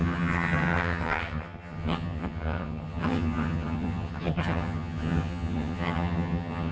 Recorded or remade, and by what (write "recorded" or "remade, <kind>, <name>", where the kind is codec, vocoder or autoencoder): remade, vocoder, HiFi-GAN